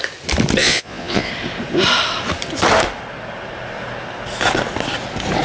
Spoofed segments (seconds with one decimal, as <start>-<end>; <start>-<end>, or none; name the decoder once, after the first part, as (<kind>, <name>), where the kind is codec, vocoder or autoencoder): 0.6-1.3 (vocoder, Vocos)